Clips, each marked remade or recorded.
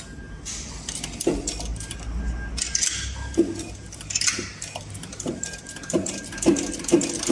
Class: recorded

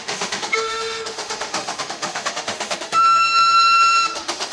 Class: remade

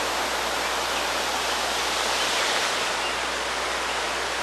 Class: recorded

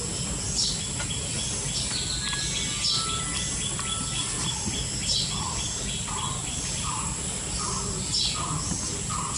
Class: recorded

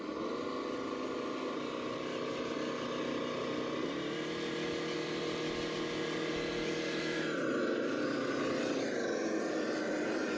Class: recorded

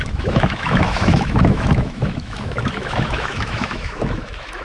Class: remade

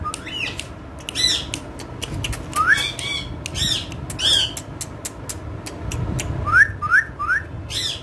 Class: recorded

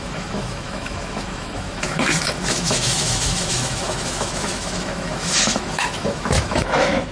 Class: remade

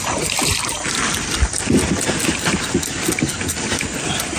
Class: recorded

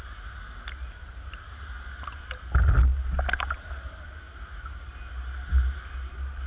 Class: recorded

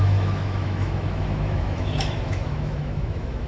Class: remade